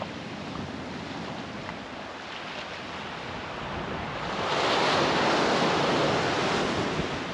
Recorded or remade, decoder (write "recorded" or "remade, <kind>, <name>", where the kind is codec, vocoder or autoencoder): recorded